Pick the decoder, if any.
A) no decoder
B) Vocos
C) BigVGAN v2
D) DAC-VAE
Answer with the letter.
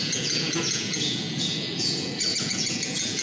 B